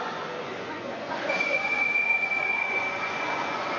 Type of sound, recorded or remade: remade